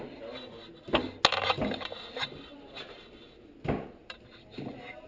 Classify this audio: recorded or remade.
recorded